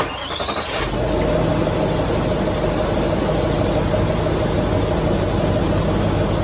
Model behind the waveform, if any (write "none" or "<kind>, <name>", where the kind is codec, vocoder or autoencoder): none